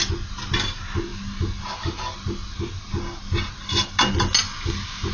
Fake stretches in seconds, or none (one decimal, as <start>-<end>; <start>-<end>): none